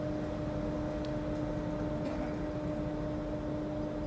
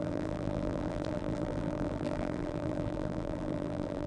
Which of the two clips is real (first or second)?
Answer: first